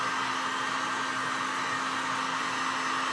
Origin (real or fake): real